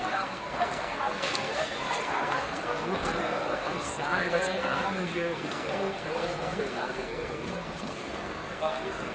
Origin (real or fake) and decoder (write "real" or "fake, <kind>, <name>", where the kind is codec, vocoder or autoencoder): fake, codec, SNAC